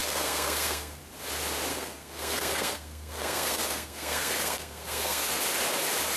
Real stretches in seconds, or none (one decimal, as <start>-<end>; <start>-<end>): 1.0-1.7; 5.4-6.2